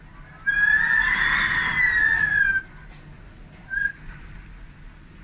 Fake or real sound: real